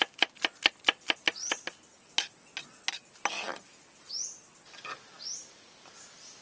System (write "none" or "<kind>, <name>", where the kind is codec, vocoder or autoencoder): none